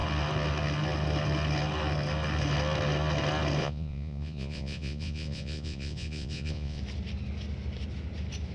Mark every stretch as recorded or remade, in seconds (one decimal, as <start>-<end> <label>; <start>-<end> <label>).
0.0-3.6 recorded; 3.6-6.8 remade; 6.8-8.5 recorded